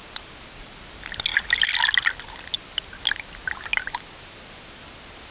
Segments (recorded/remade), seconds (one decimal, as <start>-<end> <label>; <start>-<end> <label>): 0.0-5.3 recorded